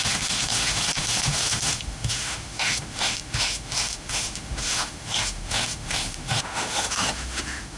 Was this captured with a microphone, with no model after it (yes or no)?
no